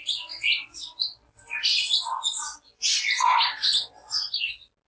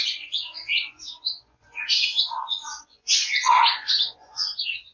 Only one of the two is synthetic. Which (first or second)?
second